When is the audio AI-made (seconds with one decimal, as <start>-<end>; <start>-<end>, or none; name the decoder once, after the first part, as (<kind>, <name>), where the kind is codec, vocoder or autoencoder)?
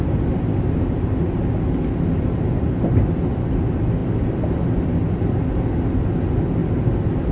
none